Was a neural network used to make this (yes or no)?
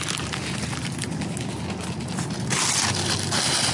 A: no